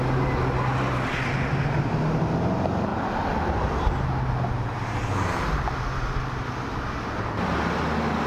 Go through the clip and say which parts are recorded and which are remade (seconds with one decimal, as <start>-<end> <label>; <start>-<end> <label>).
0.0-8.3 recorded